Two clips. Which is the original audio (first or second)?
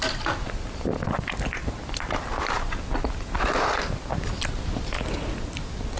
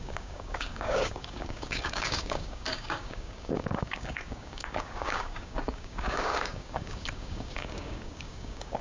first